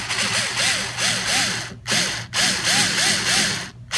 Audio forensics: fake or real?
real